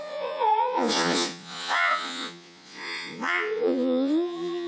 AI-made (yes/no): yes